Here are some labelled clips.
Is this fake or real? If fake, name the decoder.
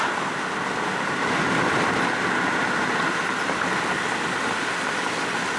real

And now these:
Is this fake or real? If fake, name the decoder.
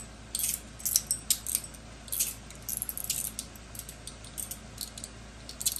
real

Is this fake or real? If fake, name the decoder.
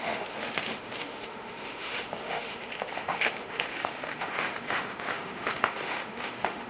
fake, autoencoder, DAC-VAE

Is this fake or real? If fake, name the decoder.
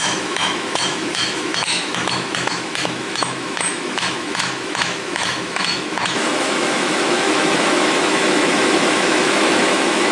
fake, autoencoder, DAC-VAE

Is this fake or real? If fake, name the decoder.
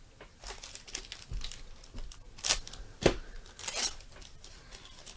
real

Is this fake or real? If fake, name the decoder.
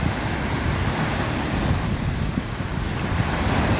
real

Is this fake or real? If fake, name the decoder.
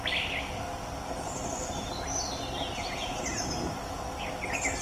real